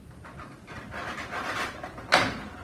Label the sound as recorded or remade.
recorded